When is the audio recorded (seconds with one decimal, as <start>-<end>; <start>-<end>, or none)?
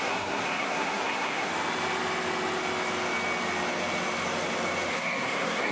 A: 1.5-4.9